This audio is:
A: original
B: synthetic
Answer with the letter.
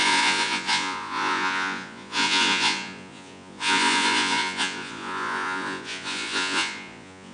B